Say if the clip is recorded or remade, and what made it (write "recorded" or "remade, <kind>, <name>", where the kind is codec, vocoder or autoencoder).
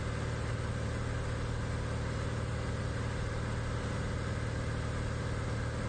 recorded